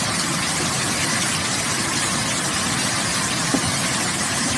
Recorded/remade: recorded